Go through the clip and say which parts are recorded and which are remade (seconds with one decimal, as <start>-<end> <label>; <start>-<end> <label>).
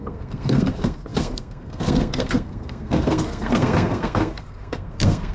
0.0-5.3 remade